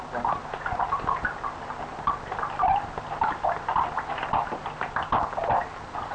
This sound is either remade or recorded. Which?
recorded